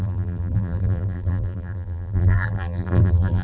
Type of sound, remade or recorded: remade